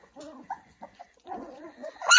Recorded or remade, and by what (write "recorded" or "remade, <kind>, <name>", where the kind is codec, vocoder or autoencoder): remade, vocoder, Vocos